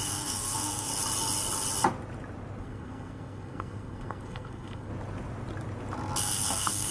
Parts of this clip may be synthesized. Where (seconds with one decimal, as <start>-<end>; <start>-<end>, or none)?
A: 0.0-0.9; 2.6-4.9; 6.2-6.9